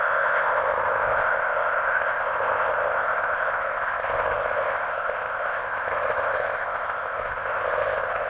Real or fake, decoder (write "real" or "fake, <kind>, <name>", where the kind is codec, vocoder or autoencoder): fake, codec, ZipCodec